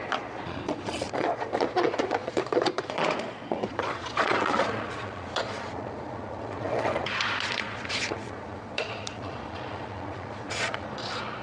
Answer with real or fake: fake